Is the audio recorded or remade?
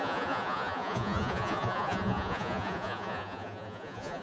remade